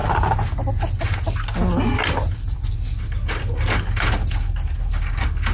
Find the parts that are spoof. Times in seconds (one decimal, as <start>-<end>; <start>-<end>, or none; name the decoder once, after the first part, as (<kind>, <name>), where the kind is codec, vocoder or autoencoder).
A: none